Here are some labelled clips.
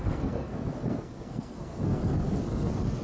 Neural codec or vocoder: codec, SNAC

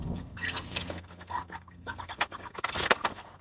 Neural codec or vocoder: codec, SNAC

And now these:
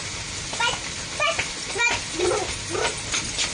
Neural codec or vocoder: none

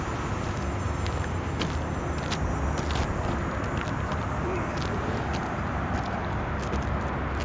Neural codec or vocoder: none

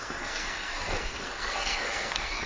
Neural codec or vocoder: codec, SNAC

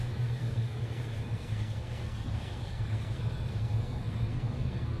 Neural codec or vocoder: codec, SNAC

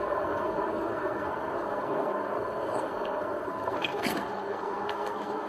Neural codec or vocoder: codec, SNAC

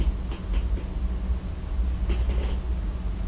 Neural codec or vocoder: none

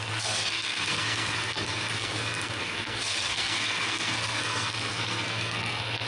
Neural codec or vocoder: codec, SNAC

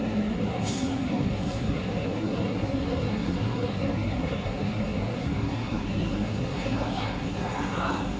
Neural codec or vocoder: codec, SNAC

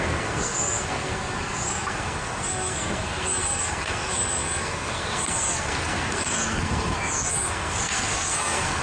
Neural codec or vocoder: codec, SNAC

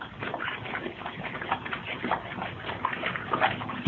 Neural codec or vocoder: none